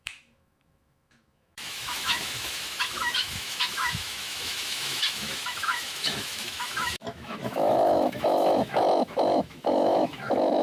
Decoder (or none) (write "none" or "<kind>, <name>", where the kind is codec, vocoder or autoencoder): autoencoder, DAC-VAE